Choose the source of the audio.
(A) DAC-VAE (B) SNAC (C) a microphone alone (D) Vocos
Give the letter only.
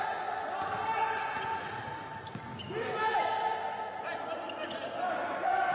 C